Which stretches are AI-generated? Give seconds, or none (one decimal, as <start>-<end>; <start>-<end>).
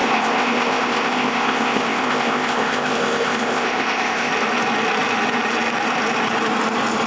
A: 0.0-4.3